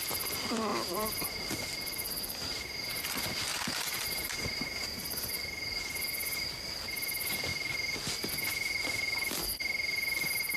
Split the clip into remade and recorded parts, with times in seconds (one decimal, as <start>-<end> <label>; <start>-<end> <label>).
0.0-0.7 recorded; 0.7-3.0 remade; 3.0-3.5 recorded; 3.5-5.3 remade; 5.3-7.5 recorded; 7.5-8.3 remade; 8.3-10.6 recorded